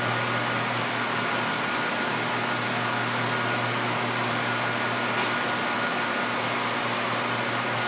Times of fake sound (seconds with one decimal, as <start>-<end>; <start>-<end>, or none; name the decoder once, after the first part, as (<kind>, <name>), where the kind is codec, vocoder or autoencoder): none